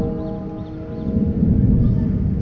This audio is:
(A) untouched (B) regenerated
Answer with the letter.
A